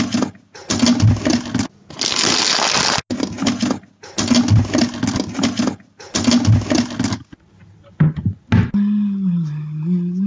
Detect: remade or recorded recorded